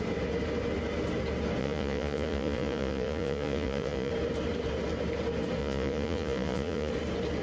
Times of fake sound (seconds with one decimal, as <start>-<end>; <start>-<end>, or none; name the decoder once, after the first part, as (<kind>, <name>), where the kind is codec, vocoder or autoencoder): 1.6-4.1 (vocoder, Vocos); 5.6-6.9